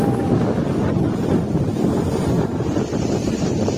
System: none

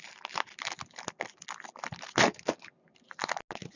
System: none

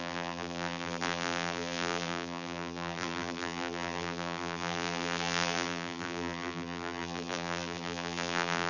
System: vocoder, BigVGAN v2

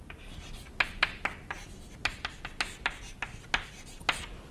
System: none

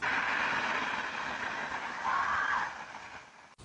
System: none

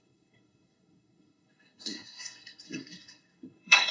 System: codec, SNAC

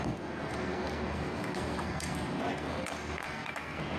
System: codec, SNAC